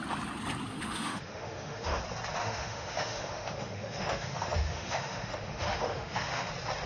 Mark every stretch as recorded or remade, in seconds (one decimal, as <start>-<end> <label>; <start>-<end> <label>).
0.0-0.7 recorded; 0.7-2.0 remade; 2.0-2.4 recorded; 2.4-6.5 remade; 6.5-6.9 recorded